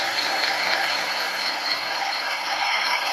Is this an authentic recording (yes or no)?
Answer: no